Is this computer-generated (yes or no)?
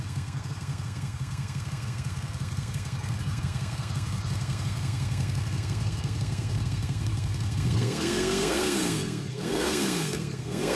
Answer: yes